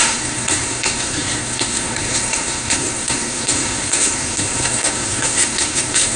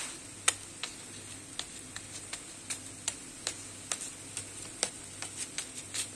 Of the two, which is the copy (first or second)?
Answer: first